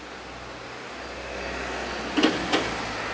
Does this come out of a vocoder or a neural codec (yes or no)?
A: no